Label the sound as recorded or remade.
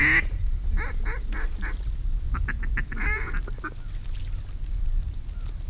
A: recorded